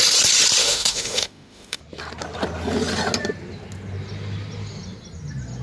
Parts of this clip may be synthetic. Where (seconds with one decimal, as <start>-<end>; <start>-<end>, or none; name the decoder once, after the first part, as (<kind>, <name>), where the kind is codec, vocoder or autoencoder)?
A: 0.6-1.8 (autoencoder, DAC-VAE)